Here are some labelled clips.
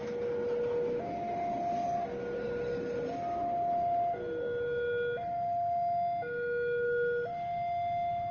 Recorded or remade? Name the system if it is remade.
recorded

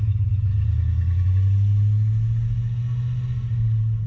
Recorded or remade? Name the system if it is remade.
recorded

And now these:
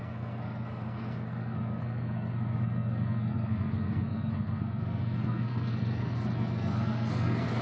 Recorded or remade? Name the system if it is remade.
remade, codec, SNAC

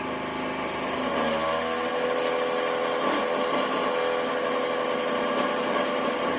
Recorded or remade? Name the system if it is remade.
recorded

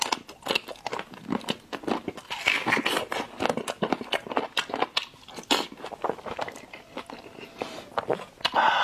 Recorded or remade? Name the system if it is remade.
recorded